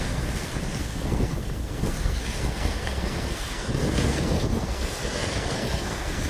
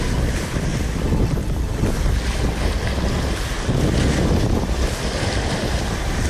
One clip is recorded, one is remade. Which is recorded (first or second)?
second